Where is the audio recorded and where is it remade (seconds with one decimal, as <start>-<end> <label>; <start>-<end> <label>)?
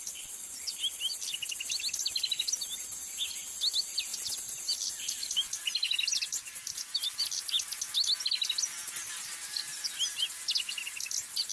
0.0-11.5 recorded